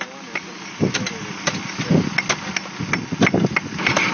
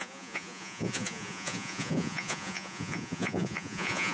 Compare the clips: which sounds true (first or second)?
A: first